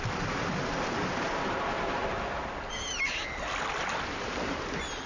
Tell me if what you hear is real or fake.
real